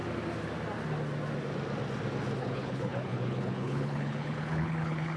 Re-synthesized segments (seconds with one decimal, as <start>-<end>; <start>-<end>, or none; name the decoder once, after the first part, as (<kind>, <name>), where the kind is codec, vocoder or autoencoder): 2.4-5.2 (codec, HILCodec)